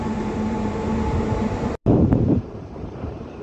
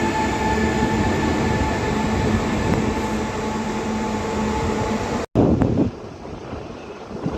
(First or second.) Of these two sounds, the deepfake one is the first